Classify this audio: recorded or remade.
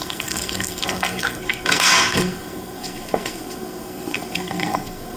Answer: remade